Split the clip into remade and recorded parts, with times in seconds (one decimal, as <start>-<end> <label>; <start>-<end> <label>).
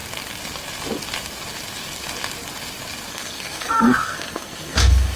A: 0.0-3.1 recorded; 3.1-5.2 remade